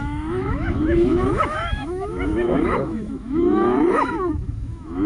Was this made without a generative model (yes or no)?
no